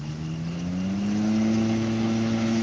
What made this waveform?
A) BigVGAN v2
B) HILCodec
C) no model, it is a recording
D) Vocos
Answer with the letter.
C